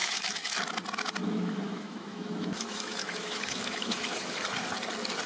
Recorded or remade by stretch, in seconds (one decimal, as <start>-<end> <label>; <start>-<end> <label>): 0.0-0.6 remade; 0.6-1.2 recorded; 1.2-4.4 remade; 4.4-5.3 recorded